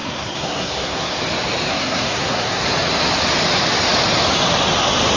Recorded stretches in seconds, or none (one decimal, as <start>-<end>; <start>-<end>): 1.2-1.7; 2.7-5.2